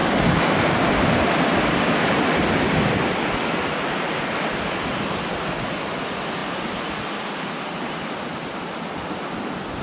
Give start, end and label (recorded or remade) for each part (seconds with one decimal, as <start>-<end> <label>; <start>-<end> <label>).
0.0-9.8 recorded

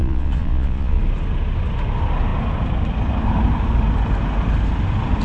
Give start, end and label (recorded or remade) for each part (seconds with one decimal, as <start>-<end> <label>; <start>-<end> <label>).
0.0-1.0 remade; 1.0-5.2 recorded